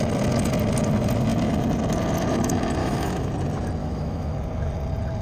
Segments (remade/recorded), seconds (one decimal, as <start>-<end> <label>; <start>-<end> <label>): 0.0-2.8 recorded; 2.8-3.3 remade; 3.3-3.8 recorded; 3.8-4.3 remade; 4.3-5.2 recorded